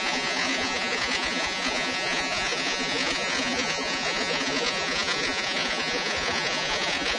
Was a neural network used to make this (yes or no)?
yes